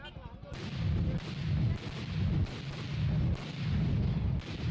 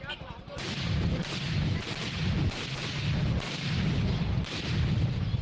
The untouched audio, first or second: first